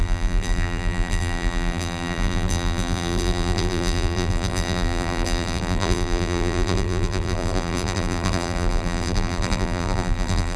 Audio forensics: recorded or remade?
remade